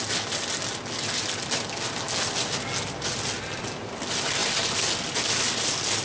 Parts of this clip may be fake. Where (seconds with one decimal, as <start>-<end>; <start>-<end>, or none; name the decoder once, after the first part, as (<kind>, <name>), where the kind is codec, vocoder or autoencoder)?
none